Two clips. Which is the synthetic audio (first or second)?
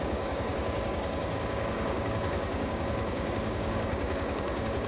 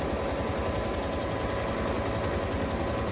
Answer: first